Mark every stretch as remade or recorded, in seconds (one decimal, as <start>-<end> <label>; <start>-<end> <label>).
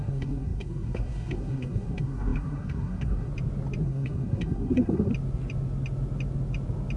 0.0-3.3 remade; 3.3-3.8 recorded; 3.8-5.1 remade; 5.1-7.0 recorded